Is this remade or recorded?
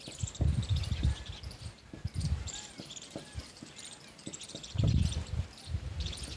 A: remade